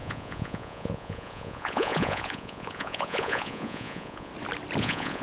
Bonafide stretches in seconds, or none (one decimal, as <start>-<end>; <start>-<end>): 4.3-4.8